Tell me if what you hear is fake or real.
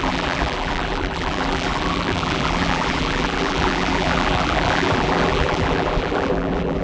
fake